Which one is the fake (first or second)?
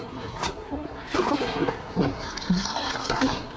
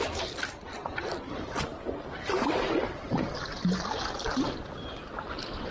first